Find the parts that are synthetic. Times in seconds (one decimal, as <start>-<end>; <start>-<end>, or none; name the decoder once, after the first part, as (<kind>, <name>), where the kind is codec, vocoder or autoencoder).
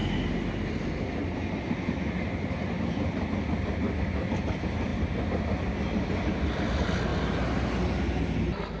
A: none